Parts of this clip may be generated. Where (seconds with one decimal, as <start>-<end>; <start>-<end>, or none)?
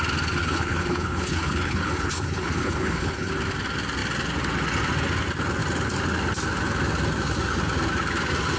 0.4-3.3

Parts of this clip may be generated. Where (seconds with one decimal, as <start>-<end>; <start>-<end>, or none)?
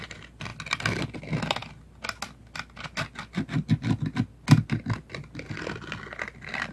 none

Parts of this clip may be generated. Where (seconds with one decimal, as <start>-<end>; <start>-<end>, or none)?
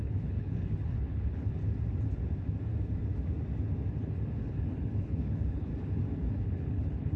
0.0-1.6; 3.9-5.7; 6.3-7.2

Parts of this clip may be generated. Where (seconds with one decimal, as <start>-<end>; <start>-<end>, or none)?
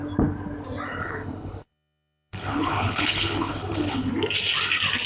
1.0-4.1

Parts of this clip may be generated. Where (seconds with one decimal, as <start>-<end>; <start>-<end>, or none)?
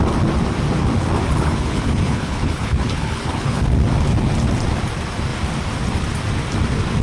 1.4-3.6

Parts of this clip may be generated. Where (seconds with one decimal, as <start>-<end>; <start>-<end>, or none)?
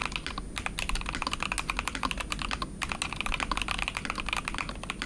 none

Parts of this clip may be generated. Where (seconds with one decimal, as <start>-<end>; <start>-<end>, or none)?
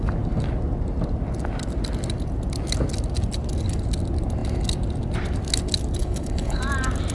6.0-6.6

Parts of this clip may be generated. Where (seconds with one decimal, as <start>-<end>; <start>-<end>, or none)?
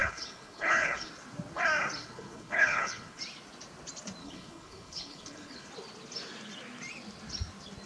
0.0-1.1; 2.0-3.2; 4.2-5.7